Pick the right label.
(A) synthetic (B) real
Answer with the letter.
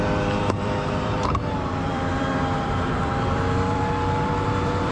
A